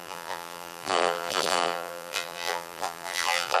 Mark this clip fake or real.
fake